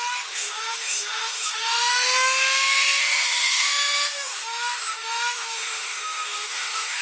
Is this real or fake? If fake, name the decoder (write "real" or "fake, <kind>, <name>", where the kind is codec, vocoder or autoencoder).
fake, autoencoder, DAC-VAE